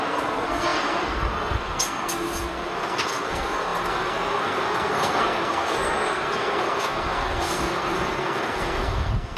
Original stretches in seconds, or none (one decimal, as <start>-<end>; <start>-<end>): none